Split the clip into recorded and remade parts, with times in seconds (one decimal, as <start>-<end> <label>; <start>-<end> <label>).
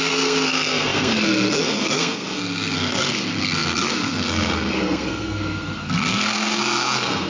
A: 0.0-7.3 remade